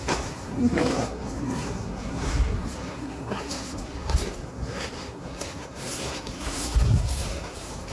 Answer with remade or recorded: remade